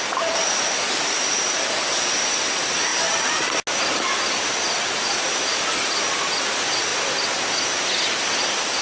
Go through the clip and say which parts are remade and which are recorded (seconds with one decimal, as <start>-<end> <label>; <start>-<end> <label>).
0.0-8.8 recorded